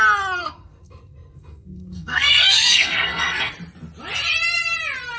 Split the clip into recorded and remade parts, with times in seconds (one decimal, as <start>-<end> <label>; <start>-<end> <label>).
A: 0.0-0.4 recorded; 0.4-3.5 remade; 3.5-5.2 recorded

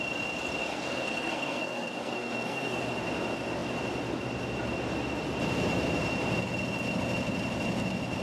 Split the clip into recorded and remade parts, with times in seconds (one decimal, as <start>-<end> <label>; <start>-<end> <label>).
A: 0.0-0.6 recorded; 0.6-2.8 remade; 2.8-8.2 recorded

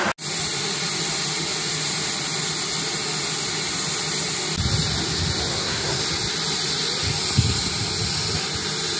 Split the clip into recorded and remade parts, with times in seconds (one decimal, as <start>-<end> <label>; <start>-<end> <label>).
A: 0.0-5.5 recorded; 5.5-6.0 remade; 6.0-9.0 recorded

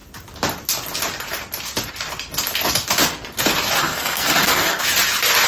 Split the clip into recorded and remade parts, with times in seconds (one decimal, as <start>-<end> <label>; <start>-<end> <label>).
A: 0.0-3.8 recorded; 3.8-4.8 remade; 4.8-5.5 recorded

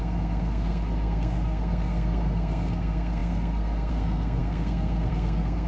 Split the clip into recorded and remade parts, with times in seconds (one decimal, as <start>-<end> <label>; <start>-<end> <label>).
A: 0.0-5.7 remade

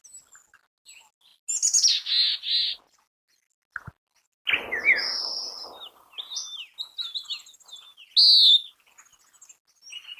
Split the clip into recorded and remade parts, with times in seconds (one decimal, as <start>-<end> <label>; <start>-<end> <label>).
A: 0.0-10.2 recorded